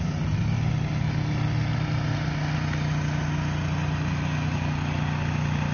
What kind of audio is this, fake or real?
real